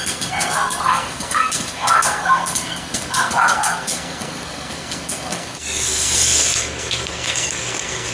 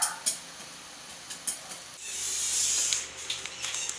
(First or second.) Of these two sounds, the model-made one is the first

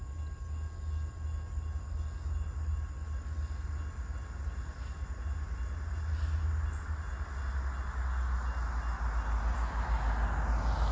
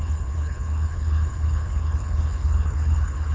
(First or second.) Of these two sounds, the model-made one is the second